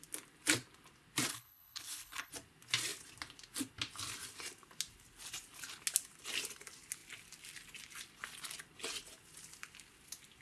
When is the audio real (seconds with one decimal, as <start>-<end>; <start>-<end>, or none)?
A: 0.0-1.3; 2.3-10.4